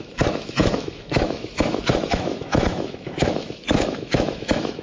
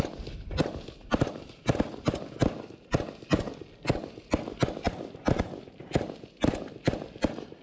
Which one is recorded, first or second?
second